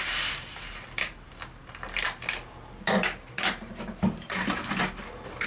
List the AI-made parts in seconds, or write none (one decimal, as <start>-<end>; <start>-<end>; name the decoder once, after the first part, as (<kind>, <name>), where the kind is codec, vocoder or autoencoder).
0.0-1.6 (vocoder, BigVGAN v2); 2.6-5.5